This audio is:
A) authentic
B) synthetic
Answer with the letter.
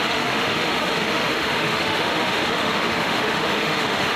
B